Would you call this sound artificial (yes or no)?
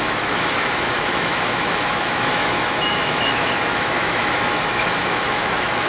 yes